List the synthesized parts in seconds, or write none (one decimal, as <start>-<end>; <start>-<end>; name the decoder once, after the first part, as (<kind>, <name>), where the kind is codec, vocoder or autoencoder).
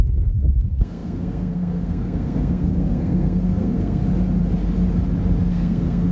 0.0-4.0 (codec, SNAC); 5.5-6.1